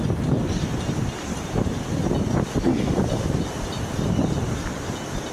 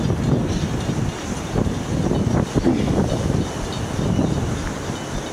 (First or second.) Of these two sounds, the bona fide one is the second